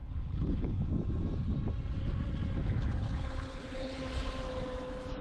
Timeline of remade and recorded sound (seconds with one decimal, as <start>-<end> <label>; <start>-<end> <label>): 0.0-0.9 remade; 0.9-2.6 recorded; 2.6-4.0 remade; 4.0-5.2 recorded